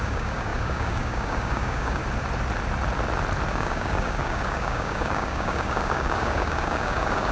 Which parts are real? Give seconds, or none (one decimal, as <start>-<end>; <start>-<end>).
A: 2.0-3.5